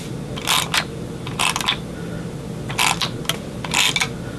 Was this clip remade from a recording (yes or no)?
no